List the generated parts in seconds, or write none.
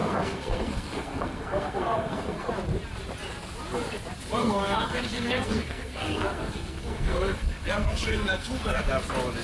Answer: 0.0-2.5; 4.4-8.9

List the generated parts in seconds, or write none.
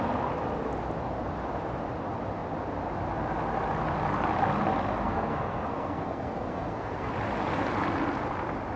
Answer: 5.0-7.1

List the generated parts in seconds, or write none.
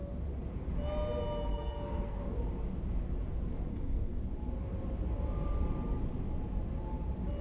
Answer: 1.5-2.2; 3.7-4.2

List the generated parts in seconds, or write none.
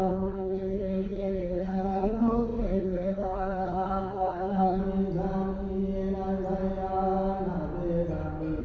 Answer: 0.0-4.8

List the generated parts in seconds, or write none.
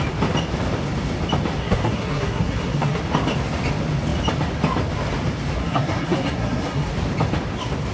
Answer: 1.6-3.0; 5.6-6.9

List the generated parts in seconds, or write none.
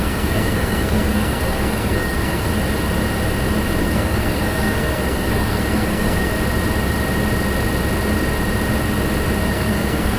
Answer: 0.0-2.5; 3.8-6.3; 9.5-10.2